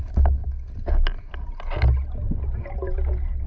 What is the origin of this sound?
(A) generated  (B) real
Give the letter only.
B